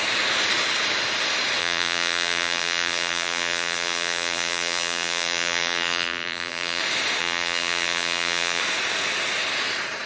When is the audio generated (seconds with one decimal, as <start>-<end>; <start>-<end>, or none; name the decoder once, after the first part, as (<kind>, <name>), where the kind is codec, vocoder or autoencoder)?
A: 1.6-6.8 (vocoder, BigVGAN v2); 7.2-8.6